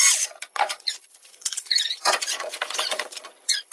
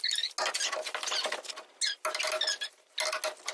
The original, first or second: second